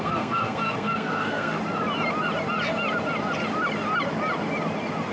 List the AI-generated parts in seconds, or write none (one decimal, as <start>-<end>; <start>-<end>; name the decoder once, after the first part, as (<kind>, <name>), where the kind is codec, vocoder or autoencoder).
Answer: 0.0-1.6 (codec, SNAC)